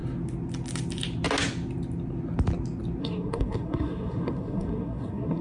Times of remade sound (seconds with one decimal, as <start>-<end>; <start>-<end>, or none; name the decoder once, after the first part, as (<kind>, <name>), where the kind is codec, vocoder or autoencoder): 3.0-5.4 (codec, SNAC)